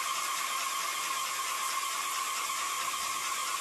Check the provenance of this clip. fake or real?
real